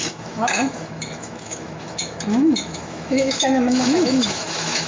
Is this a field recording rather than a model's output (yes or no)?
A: no